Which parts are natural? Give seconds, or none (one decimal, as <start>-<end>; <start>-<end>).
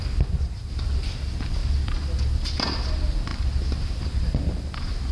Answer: 0.0-5.1